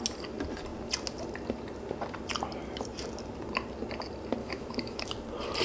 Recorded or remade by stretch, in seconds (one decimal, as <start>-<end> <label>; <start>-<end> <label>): 0.0-4.4 recorded; 4.4-5.1 remade; 5.1-5.6 recorded